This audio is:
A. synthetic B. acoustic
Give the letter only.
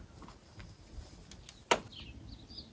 B